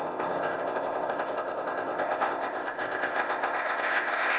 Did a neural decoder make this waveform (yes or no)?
yes